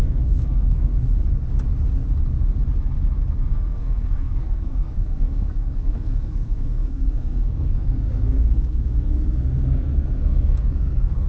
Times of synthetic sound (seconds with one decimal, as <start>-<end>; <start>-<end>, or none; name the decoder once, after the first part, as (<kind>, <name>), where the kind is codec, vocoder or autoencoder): 0.0-0.9 (codec, SNAC); 3.5-11.3